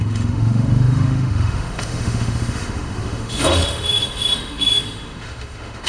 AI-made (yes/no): yes